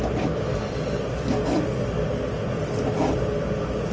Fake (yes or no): no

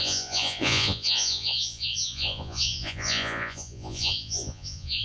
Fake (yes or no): yes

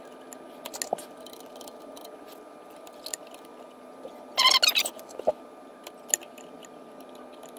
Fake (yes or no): no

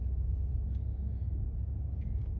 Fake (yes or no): no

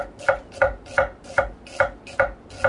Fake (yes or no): no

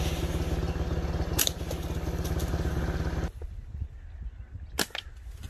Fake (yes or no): no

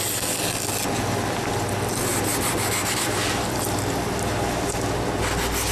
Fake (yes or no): no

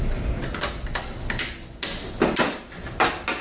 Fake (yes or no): no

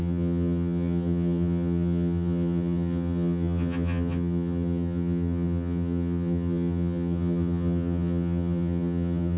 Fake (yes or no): yes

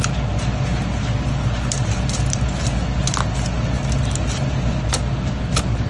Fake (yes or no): no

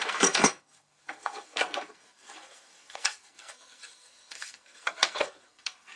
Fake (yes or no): yes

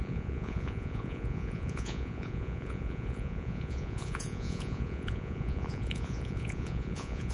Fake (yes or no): yes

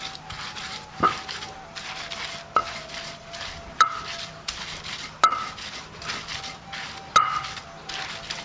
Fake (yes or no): no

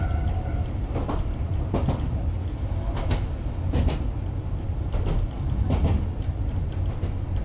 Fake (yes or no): no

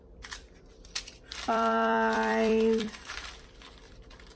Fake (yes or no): yes